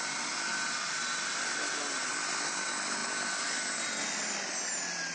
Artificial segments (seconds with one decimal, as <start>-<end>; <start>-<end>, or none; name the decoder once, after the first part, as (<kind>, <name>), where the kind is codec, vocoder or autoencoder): none